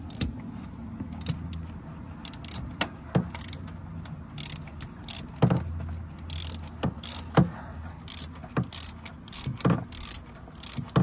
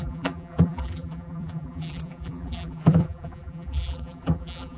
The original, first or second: first